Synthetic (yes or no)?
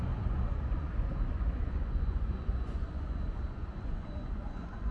yes